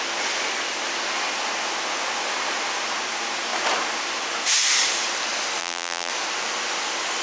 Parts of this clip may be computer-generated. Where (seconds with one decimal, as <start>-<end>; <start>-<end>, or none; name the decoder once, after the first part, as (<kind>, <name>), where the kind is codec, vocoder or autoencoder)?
5.6-6.1 (vocoder, BigVGAN v2)